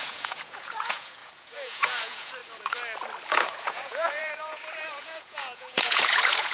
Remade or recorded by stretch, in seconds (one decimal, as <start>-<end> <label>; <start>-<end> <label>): 0.0-2.4 remade; 2.4-3.3 recorded; 3.3-6.5 remade